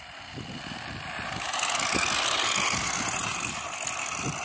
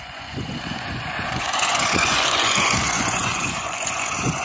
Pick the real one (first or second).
first